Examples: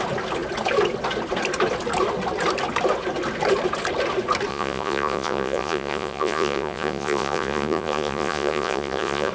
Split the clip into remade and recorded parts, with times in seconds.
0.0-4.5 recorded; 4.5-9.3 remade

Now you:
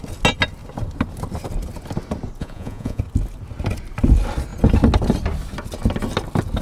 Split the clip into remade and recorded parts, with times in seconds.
0.0-2.4 recorded; 2.4-3.0 remade; 3.0-6.6 recorded